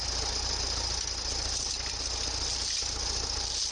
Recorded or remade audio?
recorded